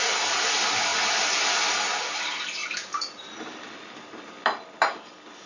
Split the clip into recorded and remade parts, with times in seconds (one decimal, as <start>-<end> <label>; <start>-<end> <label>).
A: 0.0-5.5 recorded